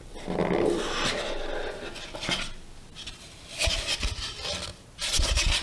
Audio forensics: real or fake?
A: real